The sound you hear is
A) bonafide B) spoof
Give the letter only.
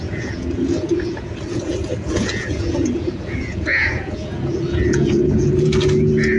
B